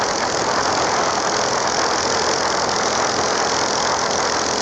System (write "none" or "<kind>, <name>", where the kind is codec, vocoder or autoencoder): none